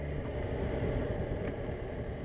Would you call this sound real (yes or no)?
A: yes